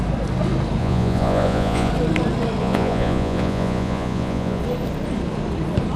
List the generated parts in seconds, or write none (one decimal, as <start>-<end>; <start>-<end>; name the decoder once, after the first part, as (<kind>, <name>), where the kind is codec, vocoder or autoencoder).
0.8-1.9 (vocoder, Vocos); 2.6-4.6